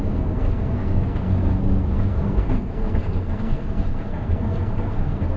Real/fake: fake